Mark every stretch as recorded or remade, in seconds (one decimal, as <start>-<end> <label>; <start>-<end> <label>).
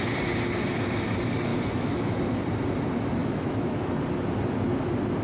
0.0-1.5 recorded; 1.5-2.2 remade; 2.2-3.2 recorded; 3.2-4.0 remade; 4.0-5.2 recorded